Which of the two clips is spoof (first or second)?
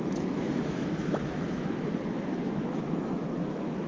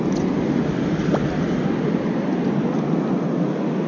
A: first